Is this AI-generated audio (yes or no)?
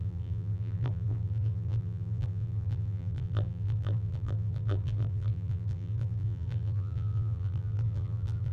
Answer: yes